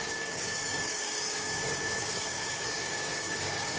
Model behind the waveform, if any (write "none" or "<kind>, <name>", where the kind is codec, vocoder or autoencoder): codec, DAC